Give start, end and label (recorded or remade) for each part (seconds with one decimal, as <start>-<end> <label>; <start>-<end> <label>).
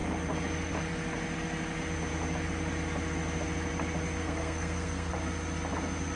0.0-4.2 recorded; 4.2-5.1 remade; 5.1-6.2 recorded